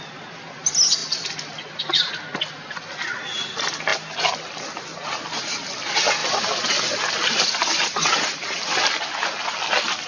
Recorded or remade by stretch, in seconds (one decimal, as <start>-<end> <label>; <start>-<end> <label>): 0.0-1.0 recorded; 1.0-2.1 remade; 2.1-6.2 recorded; 6.2-6.7 remade; 6.7-10.1 recorded